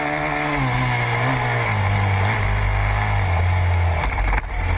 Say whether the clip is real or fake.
real